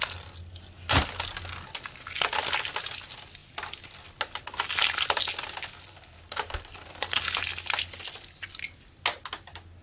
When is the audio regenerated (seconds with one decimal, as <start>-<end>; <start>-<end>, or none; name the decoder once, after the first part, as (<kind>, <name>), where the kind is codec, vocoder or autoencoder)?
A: none